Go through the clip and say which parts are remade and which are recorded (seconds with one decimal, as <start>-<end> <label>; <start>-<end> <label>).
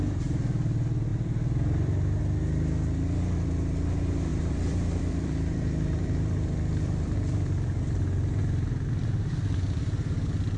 0.0-1.1 recorded; 1.1-2.2 remade; 2.2-4.3 recorded; 4.3-7.8 remade; 7.8-10.6 recorded